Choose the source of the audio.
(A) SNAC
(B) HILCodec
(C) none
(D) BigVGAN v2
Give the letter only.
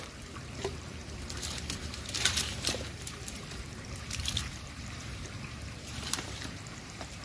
D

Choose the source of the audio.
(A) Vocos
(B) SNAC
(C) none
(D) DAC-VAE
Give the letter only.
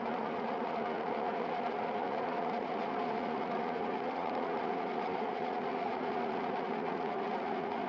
A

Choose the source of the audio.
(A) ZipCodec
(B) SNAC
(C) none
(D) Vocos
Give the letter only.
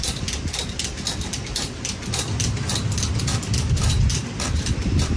C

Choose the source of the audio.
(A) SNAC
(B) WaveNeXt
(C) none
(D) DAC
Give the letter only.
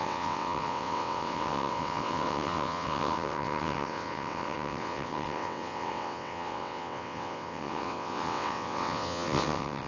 B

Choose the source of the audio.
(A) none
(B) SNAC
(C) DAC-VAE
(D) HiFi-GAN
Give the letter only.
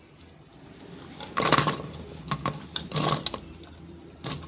A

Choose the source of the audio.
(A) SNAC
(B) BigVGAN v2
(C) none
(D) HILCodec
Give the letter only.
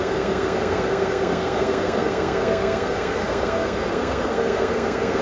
A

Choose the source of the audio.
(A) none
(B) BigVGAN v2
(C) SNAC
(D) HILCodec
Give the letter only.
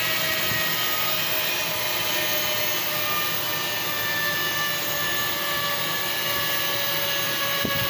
A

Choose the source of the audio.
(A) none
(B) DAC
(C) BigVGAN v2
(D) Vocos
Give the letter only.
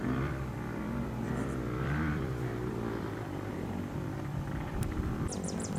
C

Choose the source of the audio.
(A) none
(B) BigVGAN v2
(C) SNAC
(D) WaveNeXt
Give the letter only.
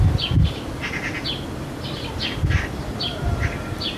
A